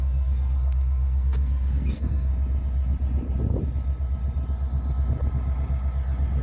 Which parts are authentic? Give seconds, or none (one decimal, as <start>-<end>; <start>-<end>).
2.3-6.4